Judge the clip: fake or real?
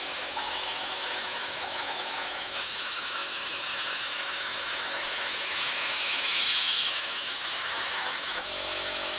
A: fake